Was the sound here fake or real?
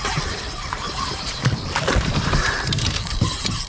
fake